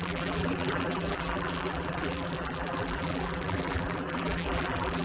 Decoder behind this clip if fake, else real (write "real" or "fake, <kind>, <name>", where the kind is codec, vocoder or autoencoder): fake, vocoder, BigVGAN v2